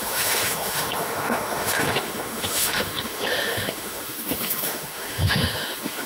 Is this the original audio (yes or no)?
no